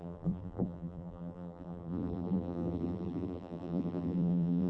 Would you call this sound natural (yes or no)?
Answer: no